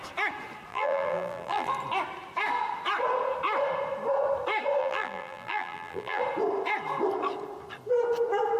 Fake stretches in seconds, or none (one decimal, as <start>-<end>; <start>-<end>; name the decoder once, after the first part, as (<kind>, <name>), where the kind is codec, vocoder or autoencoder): 0.7-1.7 (vocoder, BigVGAN v2); 4.8-6.2